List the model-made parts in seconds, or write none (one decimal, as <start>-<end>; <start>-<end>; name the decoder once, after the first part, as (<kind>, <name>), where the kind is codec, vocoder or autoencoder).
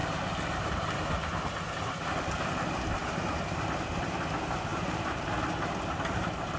0.0-2.1 (vocoder, BigVGAN v2); 4.7-5.3